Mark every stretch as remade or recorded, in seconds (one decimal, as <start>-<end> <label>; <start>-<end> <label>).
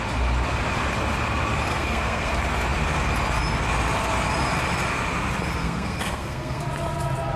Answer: 0.0-1.7 recorded; 1.7-2.3 remade; 2.3-5.6 recorded; 5.6-6.6 remade; 6.6-7.4 recorded